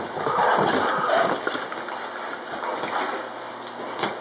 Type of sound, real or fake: real